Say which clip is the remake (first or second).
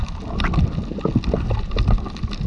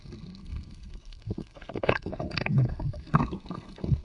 second